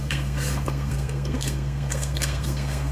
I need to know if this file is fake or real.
fake